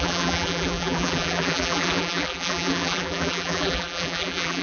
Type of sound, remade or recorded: remade